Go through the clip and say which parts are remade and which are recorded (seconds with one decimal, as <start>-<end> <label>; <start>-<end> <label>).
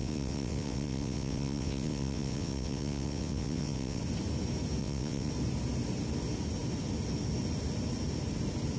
0.0-4.0 remade; 4.0-4.8 recorded; 4.8-5.3 remade; 5.3-8.8 recorded